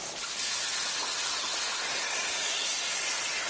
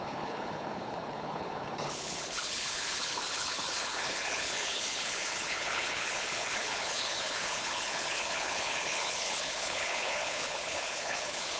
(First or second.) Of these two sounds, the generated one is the second